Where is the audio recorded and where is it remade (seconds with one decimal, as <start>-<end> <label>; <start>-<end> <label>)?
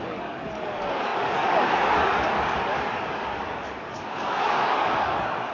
0.0-5.5 remade